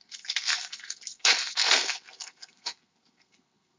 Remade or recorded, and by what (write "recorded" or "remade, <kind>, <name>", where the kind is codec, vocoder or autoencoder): remade, codec, SNAC